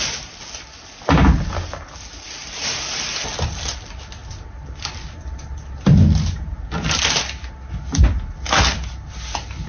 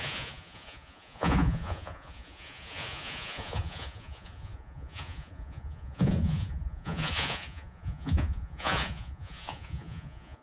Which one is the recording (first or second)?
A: first